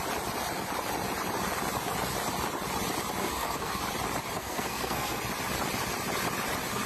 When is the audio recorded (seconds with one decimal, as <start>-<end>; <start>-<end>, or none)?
0.0-3.2; 3.8-4.4; 5.2-6.9